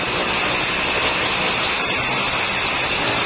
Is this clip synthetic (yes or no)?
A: no